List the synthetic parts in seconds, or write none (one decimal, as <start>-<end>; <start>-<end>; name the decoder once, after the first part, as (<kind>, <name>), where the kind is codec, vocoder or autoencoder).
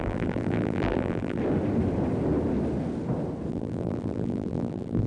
0.0-1.4 (vocoder, BigVGAN v2); 3.5-5.1